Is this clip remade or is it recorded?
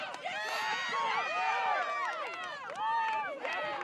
recorded